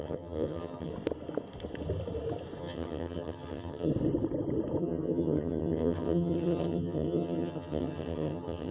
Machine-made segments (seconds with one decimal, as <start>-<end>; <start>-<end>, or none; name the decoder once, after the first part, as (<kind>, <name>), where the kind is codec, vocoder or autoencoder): 0.0-0.9 (vocoder, HiFi-GAN); 2.6-3.9; 4.8-8.7